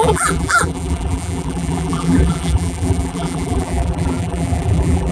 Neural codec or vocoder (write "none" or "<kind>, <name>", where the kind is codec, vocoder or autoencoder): vocoder, BigVGAN v2